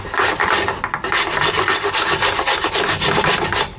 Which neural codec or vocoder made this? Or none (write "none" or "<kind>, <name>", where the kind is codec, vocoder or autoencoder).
none